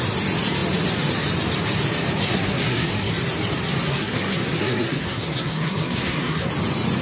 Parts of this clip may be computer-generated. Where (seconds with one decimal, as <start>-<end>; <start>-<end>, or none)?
2.2-3.1; 3.9-6.5